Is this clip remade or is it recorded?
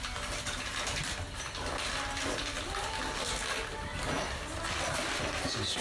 recorded